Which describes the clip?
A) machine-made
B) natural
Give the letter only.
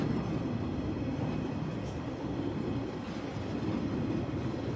B